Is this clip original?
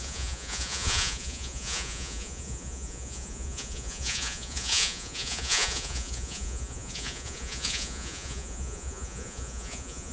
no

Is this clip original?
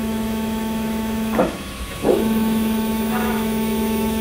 no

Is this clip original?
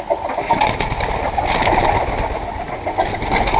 yes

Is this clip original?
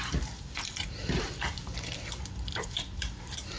no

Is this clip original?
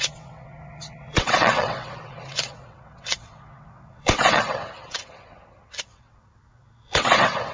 no